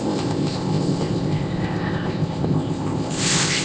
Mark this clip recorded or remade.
remade